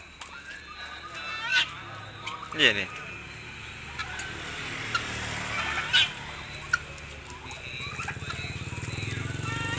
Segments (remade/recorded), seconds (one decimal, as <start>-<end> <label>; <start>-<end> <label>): 0.0-9.8 recorded